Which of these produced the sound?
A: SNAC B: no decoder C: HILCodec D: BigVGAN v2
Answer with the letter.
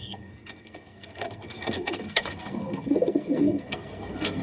A